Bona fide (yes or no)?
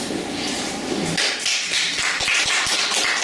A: yes